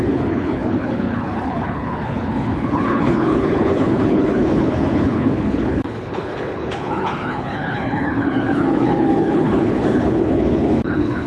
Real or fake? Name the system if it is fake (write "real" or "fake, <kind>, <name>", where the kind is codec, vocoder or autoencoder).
fake, codec, HILCodec